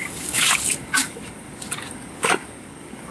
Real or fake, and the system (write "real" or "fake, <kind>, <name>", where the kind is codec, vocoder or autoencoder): fake, codec, DAC